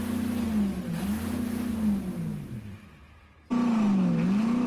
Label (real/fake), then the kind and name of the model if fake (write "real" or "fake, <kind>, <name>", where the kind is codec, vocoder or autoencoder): real